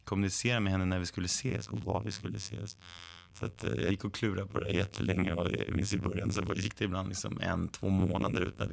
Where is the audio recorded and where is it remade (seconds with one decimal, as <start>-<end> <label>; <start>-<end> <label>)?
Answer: 0.0-1.5 recorded; 1.5-3.9 remade; 3.9-4.5 recorded; 4.5-6.7 remade; 6.7-8.0 recorded; 8.0-8.7 remade